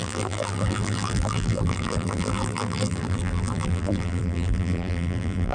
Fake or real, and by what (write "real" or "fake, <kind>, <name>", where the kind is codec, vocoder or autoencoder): fake, vocoder, BigVGAN v2